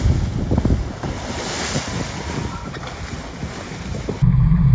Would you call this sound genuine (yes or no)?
yes